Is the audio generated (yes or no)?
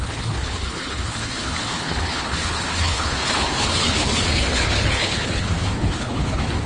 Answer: yes